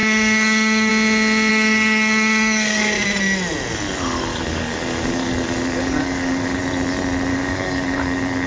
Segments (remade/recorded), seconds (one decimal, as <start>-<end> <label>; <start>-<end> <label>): 0.0-0.9 remade; 0.9-1.5 recorded; 1.5-2.9 remade; 2.9-4.3 recorded; 4.3-6.6 remade; 6.6-7.3 recorded; 7.3-8.5 remade